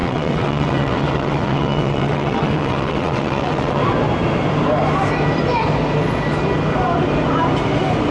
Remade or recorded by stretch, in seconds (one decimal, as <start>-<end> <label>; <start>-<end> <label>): 0.0-3.8 remade; 3.8-8.1 recorded